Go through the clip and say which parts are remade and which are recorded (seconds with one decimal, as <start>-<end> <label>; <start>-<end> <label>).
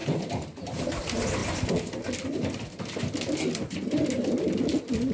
0.0-0.8 remade; 0.8-5.1 recorded